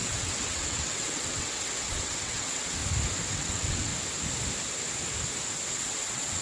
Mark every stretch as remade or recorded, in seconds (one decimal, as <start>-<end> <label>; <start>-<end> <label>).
0.0-2.8 remade; 2.8-3.3 recorded; 3.3-3.9 remade; 3.9-5.7 recorded; 5.7-6.4 remade